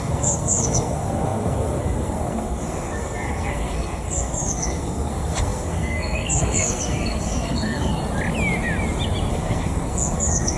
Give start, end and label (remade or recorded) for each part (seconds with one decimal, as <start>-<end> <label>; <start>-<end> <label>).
0.0-7.9 remade; 7.9-9.3 recorded; 9.3-10.6 remade